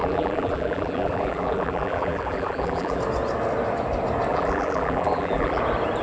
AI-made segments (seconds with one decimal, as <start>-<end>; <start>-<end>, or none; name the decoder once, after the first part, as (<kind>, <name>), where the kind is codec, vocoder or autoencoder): 0.0-3.0 (vocoder, BigVGAN v2); 4.3-5.6